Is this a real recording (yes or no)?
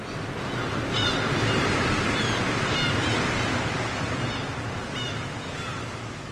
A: yes